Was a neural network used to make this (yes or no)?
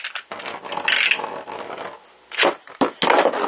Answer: no